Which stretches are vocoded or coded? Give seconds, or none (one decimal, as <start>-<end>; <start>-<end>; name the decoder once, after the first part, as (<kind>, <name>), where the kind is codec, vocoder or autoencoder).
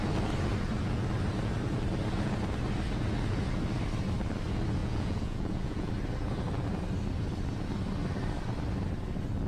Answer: 4.8-5.9 (vocoder, Vocos)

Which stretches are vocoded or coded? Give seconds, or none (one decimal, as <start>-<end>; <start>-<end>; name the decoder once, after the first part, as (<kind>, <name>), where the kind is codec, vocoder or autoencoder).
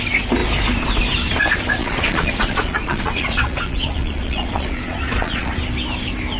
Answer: 1.8-5.6 (vocoder, Vocos)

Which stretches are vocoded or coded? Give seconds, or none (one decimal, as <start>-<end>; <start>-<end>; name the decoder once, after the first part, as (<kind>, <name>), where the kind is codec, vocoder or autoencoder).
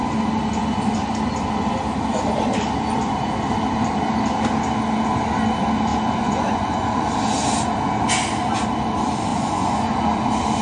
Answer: 5.9-7.1 (vocoder, Vocos); 9.3-10.0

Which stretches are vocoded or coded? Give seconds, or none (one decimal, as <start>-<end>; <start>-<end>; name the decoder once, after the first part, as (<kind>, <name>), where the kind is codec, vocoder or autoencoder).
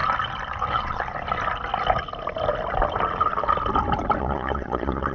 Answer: 0.7-1.1 (vocoder, Vocos); 4.2-5.1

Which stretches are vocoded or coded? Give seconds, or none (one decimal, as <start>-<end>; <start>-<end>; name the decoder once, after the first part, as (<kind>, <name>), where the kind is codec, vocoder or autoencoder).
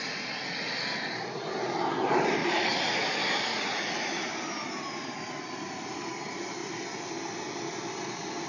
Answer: 2.4-3.0 (vocoder, Vocos); 3.5-4.3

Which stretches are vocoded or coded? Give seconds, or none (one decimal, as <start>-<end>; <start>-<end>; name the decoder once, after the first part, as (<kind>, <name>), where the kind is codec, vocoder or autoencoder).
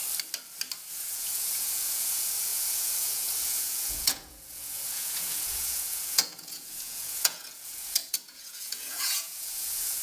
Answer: 0.9-10.0 (vocoder, Vocos)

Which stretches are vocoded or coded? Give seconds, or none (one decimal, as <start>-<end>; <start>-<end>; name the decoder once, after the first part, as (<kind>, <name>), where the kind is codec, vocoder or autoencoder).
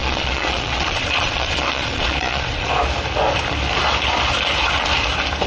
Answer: 0.0-2.7 (vocoder, Vocos)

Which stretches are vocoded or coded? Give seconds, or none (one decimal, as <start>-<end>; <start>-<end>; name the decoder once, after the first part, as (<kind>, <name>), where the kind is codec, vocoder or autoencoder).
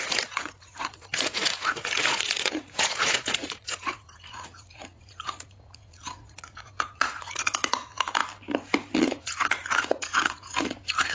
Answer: 0.0-8.2 (vocoder, Vocos); 9.0-11.1